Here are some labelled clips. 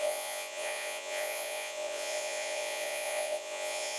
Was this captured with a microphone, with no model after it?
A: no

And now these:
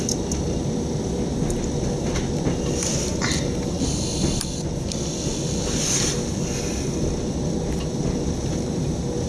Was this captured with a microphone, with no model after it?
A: yes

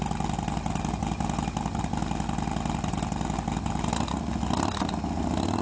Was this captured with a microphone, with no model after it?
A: yes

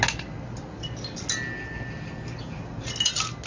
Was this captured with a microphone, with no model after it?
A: yes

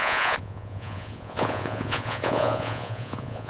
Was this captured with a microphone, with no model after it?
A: no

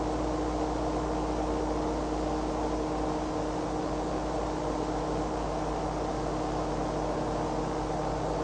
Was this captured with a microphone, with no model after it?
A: yes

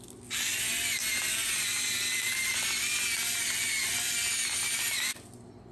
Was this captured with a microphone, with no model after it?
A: yes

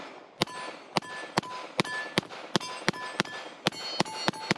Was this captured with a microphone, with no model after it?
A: yes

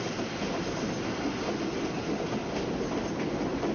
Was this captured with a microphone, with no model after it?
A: yes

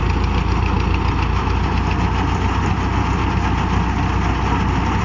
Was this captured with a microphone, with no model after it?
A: yes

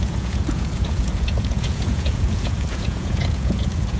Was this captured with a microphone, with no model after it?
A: no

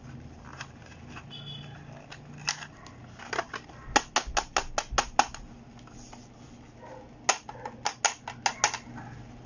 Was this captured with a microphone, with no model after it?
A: yes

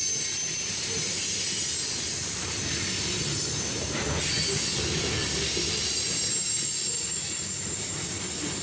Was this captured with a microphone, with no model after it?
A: yes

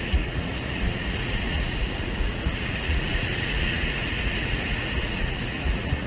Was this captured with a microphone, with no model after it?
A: no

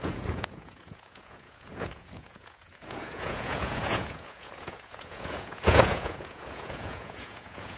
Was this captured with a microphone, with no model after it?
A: no